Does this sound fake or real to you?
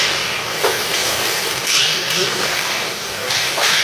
fake